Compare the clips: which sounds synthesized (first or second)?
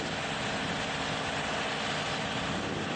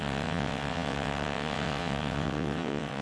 second